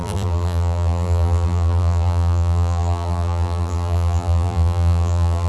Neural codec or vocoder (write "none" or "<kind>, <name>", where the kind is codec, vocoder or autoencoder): vocoder, BigVGAN v2